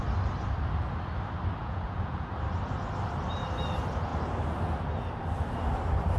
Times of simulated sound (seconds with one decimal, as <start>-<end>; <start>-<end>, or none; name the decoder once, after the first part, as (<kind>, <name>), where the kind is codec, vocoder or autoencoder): 1.6-2.3 (vocoder, Vocos)